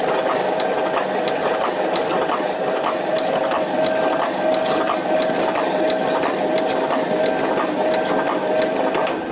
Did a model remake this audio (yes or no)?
no